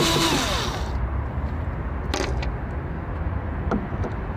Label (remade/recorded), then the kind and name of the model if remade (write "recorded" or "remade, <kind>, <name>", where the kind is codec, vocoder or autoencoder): recorded